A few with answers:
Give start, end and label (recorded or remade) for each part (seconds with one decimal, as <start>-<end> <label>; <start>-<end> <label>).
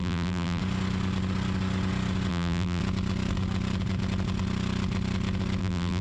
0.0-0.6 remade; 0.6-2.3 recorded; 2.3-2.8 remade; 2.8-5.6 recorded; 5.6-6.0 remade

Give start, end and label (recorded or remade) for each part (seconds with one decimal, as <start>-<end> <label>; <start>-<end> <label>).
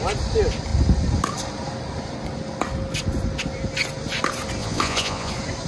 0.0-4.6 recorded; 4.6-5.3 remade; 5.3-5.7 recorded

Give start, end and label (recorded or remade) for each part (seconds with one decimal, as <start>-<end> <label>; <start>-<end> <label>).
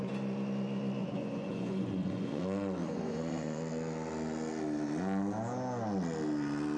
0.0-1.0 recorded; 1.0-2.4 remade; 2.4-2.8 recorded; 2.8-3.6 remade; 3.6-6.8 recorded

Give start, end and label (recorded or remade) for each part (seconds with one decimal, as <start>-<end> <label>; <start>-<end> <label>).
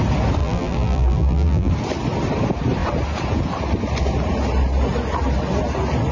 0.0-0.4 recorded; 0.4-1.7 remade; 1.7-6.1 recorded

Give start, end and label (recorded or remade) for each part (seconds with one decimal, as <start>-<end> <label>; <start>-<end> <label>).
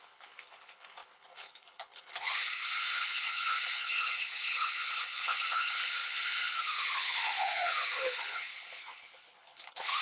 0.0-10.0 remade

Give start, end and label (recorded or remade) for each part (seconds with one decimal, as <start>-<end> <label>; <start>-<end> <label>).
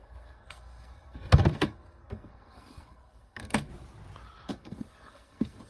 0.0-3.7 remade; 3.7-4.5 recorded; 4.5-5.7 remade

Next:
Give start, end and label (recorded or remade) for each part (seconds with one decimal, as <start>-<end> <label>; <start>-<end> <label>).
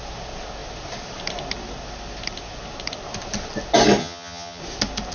0.0-4.0 recorded; 4.0-4.6 remade; 4.6-5.1 recorded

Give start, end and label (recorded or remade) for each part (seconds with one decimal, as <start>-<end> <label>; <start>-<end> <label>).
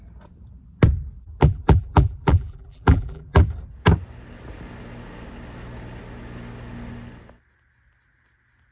0.0-1.4 recorded; 1.4-3.4 remade; 3.4-8.7 recorded